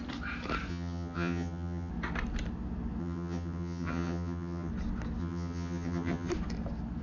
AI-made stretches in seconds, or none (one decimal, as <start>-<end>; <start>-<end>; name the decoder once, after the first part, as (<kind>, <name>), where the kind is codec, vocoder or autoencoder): 0.7-1.9 (vocoder, HiFi-GAN); 3.0-4.7; 5.2-6.3